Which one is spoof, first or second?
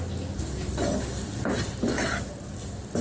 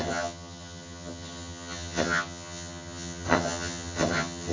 second